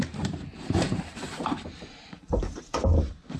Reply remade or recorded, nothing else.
remade